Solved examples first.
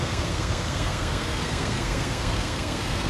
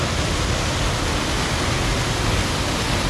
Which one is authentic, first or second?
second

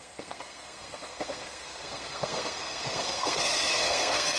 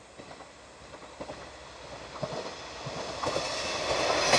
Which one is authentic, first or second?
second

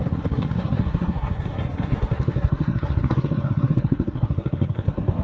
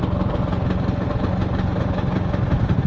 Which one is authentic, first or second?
second